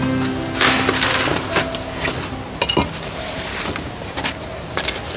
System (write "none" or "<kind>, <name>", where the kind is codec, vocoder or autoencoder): none